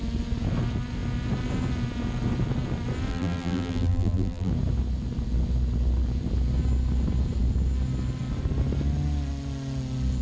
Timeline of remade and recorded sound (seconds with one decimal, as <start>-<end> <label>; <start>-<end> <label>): 0.0-3.1 recorded; 3.1-4.5 remade; 4.5-10.2 recorded